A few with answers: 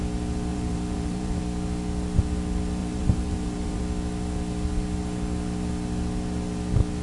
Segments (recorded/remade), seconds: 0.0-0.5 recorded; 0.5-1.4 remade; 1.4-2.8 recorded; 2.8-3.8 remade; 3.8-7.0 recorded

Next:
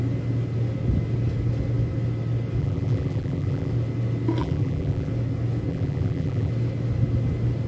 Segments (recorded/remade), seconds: 0.0-2.6 recorded; 2.6-3.7 remade; 3.7-4.4 recorded; 4.4-5.1 remade; 5.1-5.7 recorded; 5.7-6.5 remade; 6.5-7.7 recorded

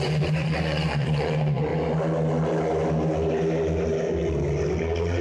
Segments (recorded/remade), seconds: 0.0-1.7 remade; 1.7-4.8 recorded; 4.8-5.2 remade

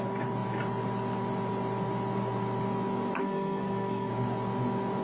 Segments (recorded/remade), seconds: 0.0-3.2 recorded; 3.2-4.1 remade; 4.1-5.0 recorded

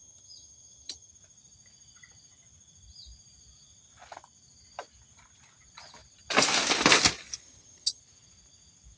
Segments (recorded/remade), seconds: 0.0-1.1 remade; 1.1-7.4 recorded; 7.4-8.0 remade; 8.0-9.0 recorded

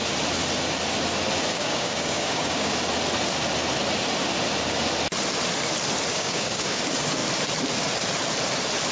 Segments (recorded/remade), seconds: 0.0-1.5 recorded; 1.5-2.7 remade; 2.7-6.1 recorded; 6.1-6.8 remade; 6.8-8.9 recorded